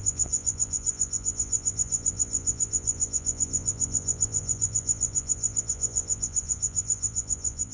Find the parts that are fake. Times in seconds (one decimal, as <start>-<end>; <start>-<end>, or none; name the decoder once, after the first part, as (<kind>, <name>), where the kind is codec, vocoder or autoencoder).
0.0-7.7 (vocoder, Vocos)

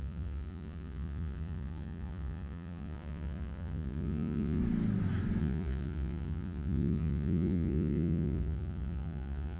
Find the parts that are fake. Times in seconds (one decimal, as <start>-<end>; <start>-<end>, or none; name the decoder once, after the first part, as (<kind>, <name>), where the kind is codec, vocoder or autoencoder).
0.0-4.6 (vocoder, Vocos); 5.4-9.6

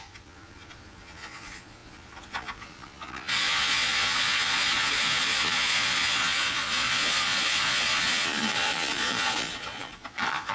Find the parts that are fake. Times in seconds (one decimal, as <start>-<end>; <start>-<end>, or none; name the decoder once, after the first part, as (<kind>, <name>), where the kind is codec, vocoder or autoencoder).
0.0-10.5 (vocoder, Vocos)

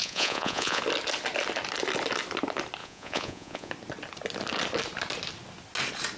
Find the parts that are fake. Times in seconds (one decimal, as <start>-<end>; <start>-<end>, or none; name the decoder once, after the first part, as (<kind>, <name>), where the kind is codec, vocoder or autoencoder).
0.0-0.8 (vocoder, Vocos); 2.8-3.7

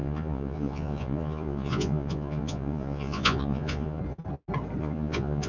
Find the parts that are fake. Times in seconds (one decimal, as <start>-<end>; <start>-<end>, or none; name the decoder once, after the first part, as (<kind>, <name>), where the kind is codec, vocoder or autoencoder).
0.0-4.0 (vocoder, Vocos); 4.8-5.5